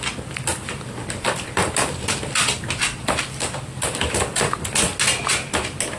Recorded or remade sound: recorded